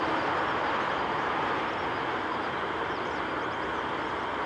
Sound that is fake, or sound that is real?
real